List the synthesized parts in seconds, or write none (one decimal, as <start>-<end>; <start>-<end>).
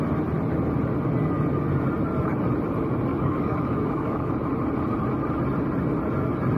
3.1-4.3